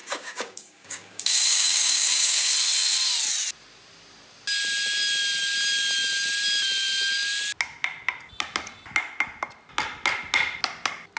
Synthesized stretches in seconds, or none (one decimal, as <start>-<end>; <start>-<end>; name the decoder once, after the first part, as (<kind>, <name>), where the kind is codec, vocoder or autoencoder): 0.0-2.5 (codec, DAC)